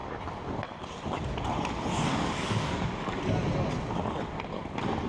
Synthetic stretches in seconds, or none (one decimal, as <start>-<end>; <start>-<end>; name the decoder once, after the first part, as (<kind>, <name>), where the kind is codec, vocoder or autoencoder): 2.1-3.2 (codec, DAC)